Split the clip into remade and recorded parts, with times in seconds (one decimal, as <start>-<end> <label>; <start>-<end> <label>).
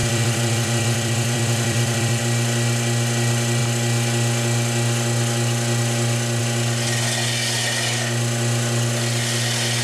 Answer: 0.0-2.2 remade; 2.2-9.8 recorded